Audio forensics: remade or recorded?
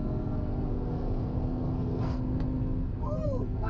remade